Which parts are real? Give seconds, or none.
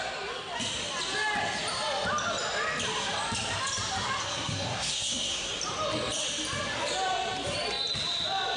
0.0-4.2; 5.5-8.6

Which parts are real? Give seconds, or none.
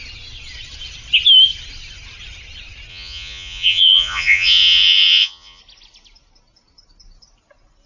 0.0-2.9; 5.6-7.9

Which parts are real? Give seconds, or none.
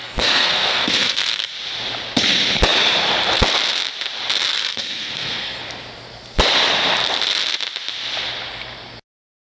1.5-4.5; 5.6-9.6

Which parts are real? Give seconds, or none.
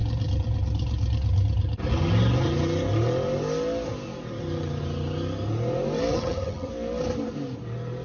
0.0-6.1; 6.7-8.0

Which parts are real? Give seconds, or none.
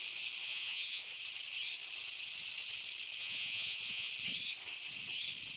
0.0-0.4; 1.1-3.2; 4.1-5.6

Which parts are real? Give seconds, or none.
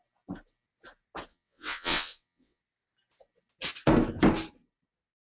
0.0-1.3; 2.6-5.3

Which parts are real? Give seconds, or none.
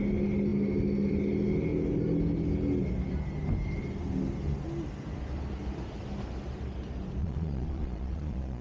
0.0-7.2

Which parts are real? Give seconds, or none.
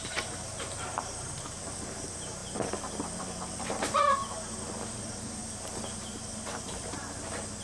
2.4-3.2; 4.2-5.0; 5.4-6.3